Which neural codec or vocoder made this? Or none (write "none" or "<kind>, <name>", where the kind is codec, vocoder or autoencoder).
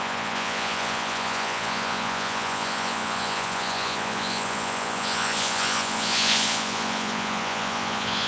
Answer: vocoder, Vocos